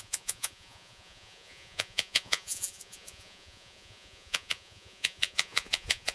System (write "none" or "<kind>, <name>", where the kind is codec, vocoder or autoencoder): vocoder, Vocos